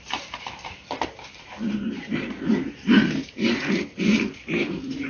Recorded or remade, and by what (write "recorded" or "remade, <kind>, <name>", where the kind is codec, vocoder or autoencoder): remade, vocoder, BigVGAN v2